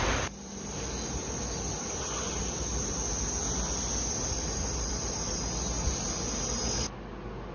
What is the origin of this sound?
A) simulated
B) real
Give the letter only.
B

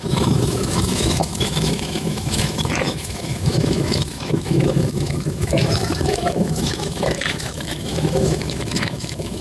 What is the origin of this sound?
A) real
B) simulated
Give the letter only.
B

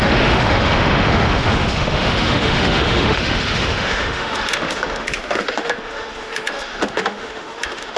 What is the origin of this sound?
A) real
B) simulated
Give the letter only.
B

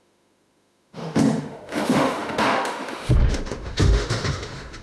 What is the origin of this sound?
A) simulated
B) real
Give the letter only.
A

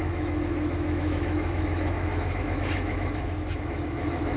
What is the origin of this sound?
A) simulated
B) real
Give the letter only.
A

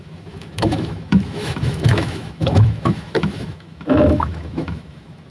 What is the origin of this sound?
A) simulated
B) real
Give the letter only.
A